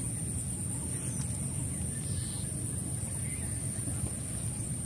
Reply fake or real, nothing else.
real